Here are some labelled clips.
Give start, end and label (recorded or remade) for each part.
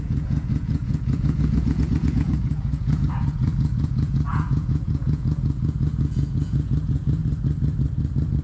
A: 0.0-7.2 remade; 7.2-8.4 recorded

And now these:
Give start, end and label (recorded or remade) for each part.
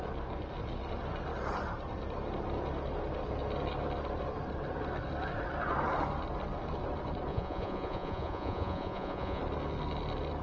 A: 0.0-7.3 recorded; 7.3-9.4 remade; 9.4-10.4 recorded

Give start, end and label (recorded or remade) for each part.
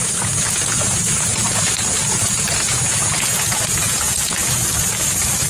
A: 0.0-4.4 remade; 4.4-5.5 recorded